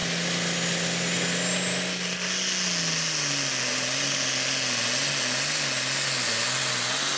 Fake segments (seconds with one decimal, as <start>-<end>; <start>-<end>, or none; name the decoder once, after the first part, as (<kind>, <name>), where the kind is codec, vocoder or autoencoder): none